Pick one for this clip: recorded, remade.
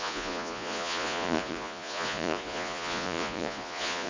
remade